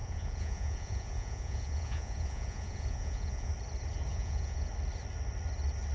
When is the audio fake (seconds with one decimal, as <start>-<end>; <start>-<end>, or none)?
0.0-3.5; 4.1-4.7